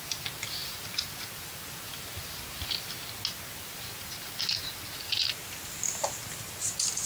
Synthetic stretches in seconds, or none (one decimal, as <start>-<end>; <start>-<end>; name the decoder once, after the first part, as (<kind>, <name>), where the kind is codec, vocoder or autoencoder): none